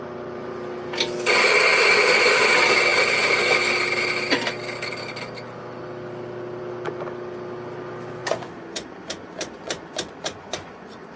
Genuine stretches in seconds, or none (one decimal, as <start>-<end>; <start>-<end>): 0.0-8.2